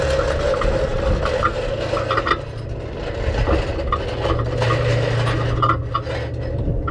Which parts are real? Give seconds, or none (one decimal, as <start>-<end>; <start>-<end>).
0.0-6.9